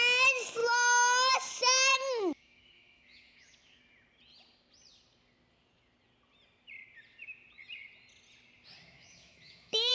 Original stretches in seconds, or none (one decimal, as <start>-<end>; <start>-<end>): 0.0-1.9; 3.8-8.8